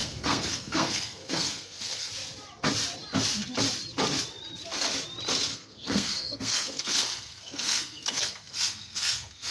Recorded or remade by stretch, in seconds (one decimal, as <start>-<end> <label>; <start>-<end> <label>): 0.0-2.1 remade; 2.1-5.5 recorded; 5.5-9.5 remade